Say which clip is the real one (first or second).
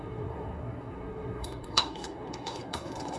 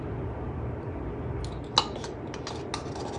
second